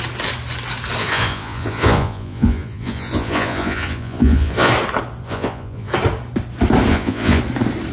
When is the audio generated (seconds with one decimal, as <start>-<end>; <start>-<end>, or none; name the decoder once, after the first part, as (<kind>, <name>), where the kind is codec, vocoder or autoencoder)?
1.0-4.7 (vocoder, Vocos); 5.2-5.9; 6.9-7.4